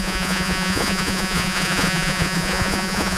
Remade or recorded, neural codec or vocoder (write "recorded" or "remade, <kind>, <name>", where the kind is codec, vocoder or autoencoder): remade, vocoder, Vocos